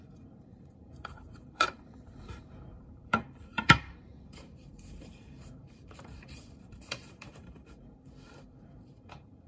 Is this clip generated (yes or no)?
yes